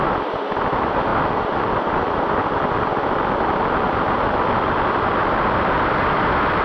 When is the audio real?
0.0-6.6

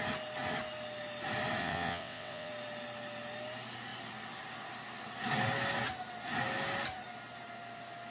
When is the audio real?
0.0-1.6; 2.5-8.1

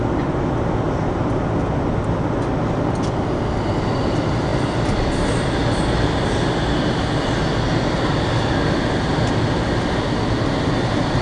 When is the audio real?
0.0-11.2

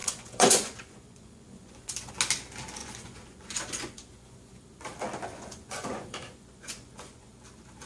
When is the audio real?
2.1-2.8; 4.5-5.3; 7.3-7.9

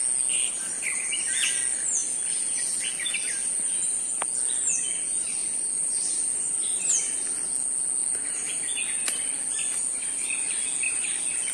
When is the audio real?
0.0-5.4; 6.9-11.5

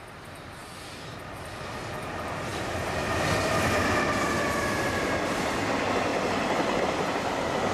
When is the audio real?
0.0-6.1; 7.1-7.7